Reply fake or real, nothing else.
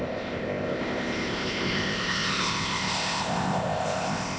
fake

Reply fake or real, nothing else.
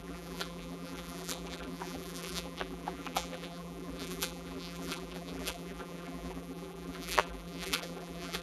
fake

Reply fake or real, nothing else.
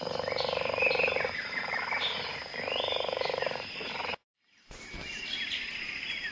fake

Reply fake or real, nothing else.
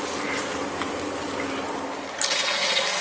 real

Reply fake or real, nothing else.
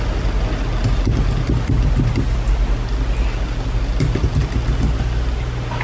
real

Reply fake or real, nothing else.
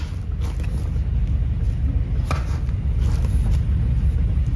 real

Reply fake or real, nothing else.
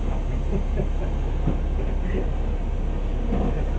real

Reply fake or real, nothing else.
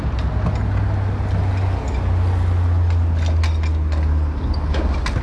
real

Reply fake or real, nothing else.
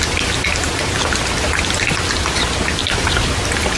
real